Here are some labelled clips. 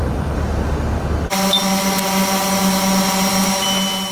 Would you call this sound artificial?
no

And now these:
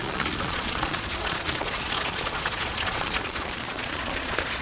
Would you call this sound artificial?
yes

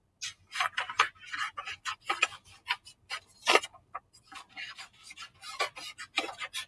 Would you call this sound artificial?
no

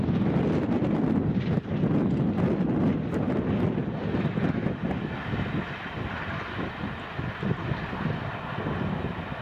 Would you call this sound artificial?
no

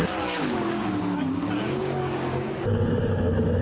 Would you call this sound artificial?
yes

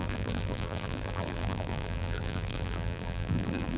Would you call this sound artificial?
yes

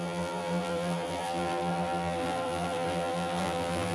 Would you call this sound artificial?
yes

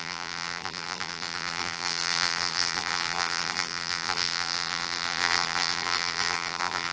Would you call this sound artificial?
yes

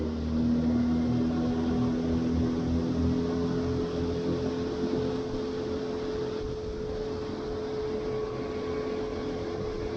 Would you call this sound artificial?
no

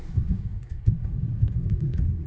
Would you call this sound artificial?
yes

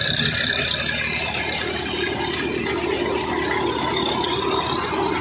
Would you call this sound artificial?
no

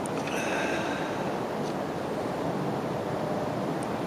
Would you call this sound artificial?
no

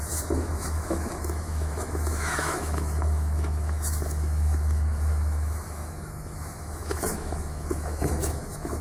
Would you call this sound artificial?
yes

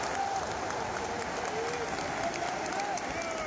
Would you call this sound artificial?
no